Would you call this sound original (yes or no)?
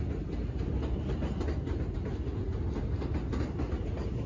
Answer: yes